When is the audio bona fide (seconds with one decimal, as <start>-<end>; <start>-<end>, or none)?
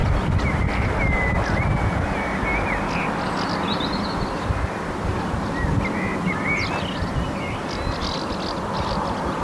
0.0-9.4